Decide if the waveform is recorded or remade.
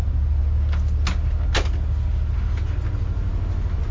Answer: recorded